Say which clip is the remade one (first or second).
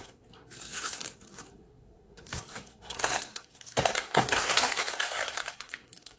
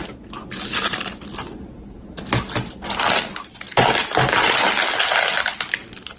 first